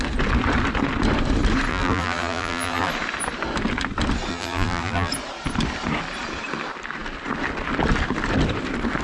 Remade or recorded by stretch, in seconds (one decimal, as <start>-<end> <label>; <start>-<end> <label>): 0.0-1.7 recorded; 1.7-2.9 remade; 2.9-4.3 recorded; 4.3-5.1 remade; 5.1-9.0 recorded